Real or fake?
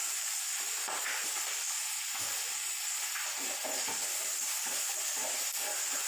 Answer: fake